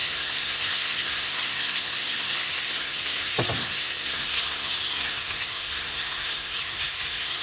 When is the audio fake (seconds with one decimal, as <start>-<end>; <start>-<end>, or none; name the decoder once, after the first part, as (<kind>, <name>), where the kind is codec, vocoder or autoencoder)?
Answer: 0.0-7.4 (codec, SNAC)